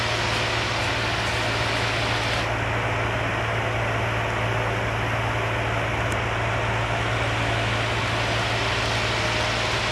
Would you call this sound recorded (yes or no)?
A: yes